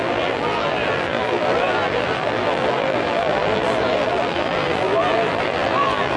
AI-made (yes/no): yes